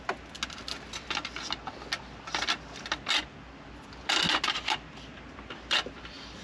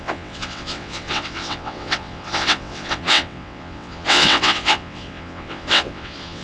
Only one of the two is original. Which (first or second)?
first